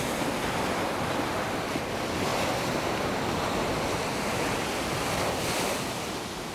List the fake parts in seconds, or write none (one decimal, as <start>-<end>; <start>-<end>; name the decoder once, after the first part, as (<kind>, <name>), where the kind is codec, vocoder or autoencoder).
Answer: none